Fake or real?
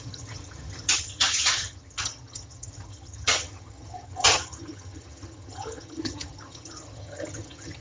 fake